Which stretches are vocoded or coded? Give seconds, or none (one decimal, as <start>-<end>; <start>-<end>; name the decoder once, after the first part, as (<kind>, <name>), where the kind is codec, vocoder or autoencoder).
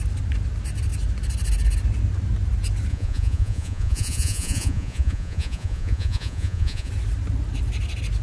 2.9-6.9 (vocoder, Vocos)